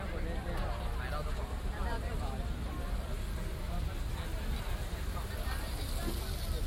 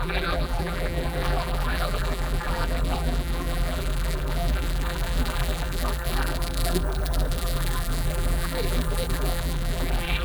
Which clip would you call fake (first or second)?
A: second